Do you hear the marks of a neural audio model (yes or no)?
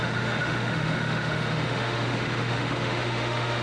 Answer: yes